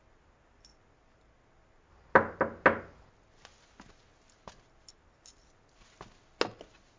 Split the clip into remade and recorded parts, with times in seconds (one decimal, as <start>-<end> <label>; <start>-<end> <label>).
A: 0.0-7.0 recorded